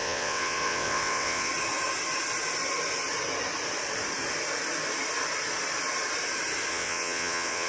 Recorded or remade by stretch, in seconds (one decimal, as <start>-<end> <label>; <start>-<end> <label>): 0.0-1.5 remade; 1.5-6.7 recorded; 6.7-7.7 remade